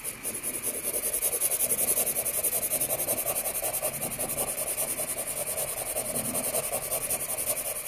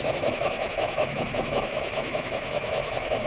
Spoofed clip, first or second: second